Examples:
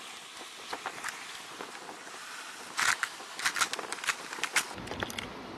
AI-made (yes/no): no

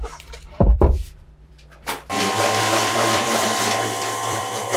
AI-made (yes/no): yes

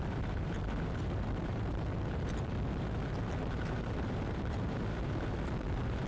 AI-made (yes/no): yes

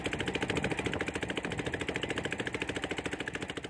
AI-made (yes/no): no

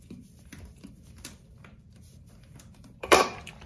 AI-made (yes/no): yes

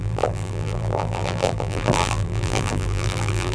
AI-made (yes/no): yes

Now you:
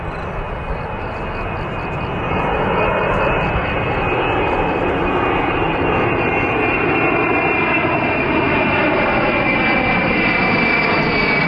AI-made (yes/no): no